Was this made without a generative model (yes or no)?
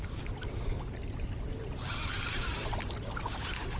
yes